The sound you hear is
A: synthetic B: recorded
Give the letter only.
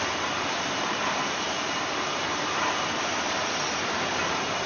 A